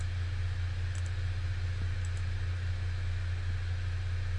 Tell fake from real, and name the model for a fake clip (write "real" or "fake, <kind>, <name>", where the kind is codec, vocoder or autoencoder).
real